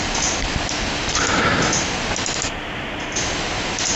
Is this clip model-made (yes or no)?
no